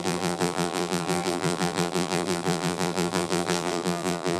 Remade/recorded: remade